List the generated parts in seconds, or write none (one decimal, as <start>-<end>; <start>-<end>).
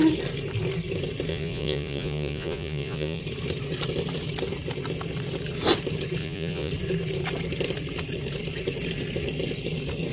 1.3-3.2; 6.2-6.7